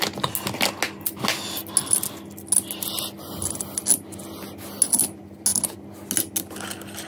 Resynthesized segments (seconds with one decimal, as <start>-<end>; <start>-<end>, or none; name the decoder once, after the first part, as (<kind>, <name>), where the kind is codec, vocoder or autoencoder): none